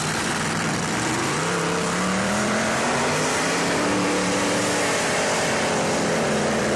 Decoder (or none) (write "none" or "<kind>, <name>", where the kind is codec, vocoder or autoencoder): vocoder, BigVGAN v2